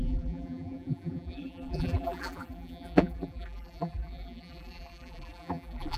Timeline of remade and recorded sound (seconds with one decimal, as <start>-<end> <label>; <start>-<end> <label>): 0.0-6.0 remade